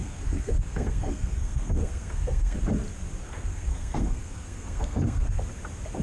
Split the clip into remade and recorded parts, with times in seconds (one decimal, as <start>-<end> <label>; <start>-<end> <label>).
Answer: 0.0-2.6 remade; 2.6-3.2 recorded; 3.2-5.4 remade; 5.4-6.0 recorded